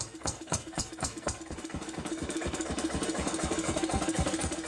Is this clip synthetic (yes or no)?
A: yes